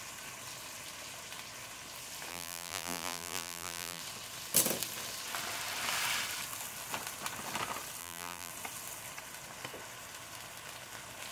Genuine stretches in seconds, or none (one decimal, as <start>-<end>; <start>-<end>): 0.0-2.3; 4.0-8.0; 8.5-11.3